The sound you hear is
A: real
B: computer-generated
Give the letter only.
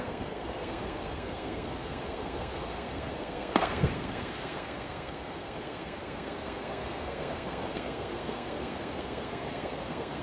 B